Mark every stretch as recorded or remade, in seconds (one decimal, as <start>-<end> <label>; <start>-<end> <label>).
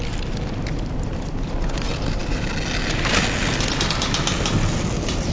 0.0-5.3 recorded